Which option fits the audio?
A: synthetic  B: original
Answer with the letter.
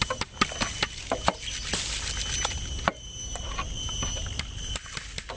B